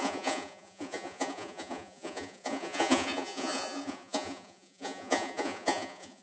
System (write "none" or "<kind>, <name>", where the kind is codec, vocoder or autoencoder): vocoder, Vocos